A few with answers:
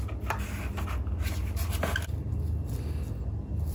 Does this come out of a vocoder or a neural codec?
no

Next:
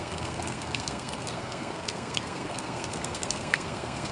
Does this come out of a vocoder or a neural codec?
yes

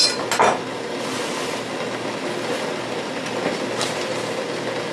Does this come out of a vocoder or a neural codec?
no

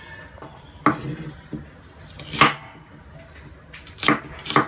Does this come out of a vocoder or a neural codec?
no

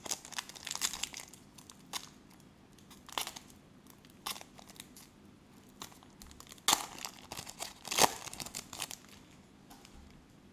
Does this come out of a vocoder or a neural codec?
no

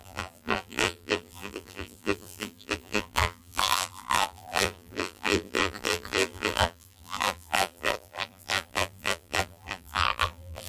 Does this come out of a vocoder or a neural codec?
yes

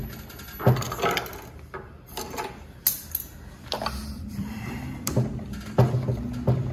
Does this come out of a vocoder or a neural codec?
no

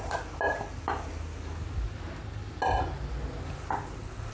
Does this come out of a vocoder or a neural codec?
no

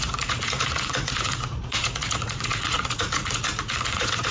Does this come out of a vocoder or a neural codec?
yes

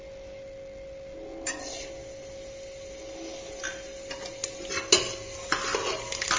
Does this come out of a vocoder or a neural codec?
no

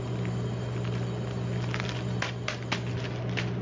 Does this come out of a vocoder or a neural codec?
no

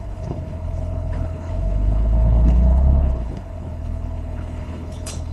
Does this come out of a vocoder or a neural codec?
yes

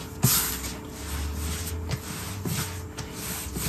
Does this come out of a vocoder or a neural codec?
no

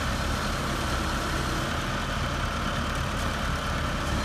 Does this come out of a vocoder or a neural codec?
no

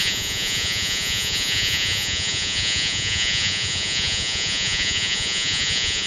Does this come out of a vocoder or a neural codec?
yes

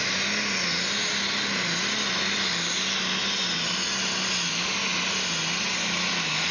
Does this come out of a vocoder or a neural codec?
no